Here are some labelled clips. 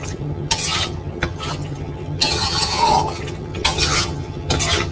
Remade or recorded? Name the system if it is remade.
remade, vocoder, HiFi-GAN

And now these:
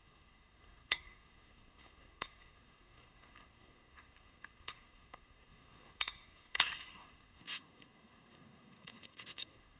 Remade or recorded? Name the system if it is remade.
remade, codec, SNAC